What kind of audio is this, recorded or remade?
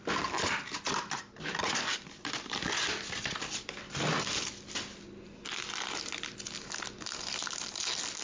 recorded